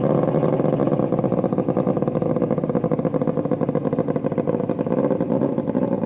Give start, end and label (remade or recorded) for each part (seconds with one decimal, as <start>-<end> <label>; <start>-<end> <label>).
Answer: 0.0-6.1 recorded